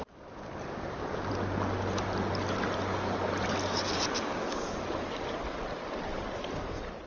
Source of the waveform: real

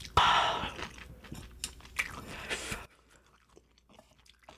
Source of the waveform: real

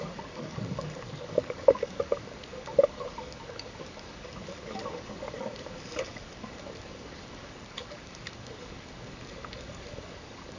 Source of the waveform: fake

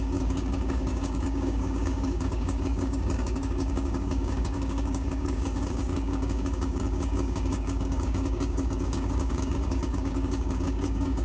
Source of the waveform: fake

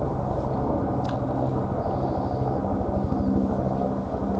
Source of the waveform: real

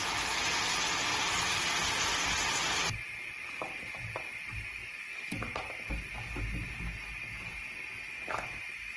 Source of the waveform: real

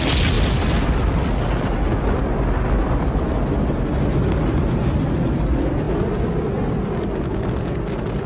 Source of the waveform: real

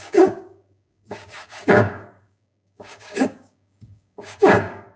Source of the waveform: fake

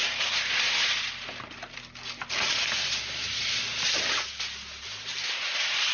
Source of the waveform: real